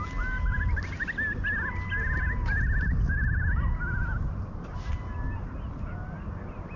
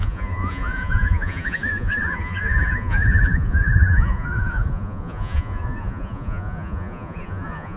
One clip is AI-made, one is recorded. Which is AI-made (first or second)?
second